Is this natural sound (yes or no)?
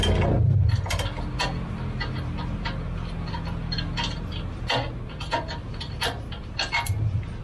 yes